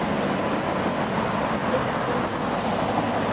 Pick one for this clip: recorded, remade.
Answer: recorded